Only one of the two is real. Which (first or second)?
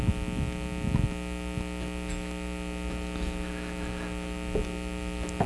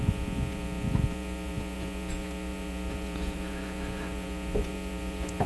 first